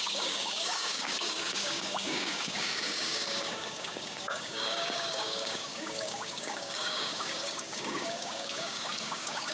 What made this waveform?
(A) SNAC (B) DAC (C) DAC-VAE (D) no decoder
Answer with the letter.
B